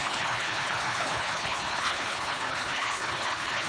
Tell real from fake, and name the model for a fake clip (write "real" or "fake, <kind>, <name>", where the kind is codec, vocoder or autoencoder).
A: fake, codec, HILCodec